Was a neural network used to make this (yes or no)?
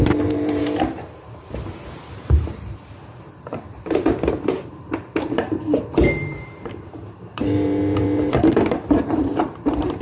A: yes